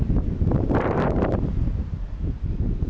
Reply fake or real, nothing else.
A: fake